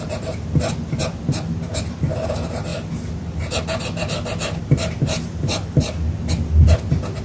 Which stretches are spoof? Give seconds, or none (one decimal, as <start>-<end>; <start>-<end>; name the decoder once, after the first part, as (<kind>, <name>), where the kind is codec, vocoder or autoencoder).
none